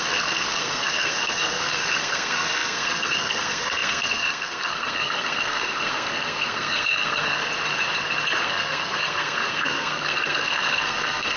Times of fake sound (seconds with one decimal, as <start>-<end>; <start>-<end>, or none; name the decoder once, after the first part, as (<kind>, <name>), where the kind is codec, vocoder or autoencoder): 0.0-7.4 (codec, SNAC); 8.4-11.4